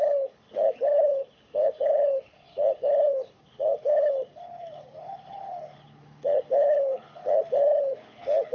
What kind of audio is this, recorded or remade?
remade